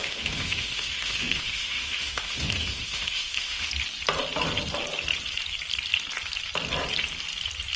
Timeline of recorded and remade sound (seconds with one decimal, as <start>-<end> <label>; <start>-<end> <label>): 0.0-3.7 remade; 3.7-7.8 recorded